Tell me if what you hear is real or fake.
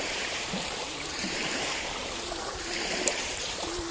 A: fake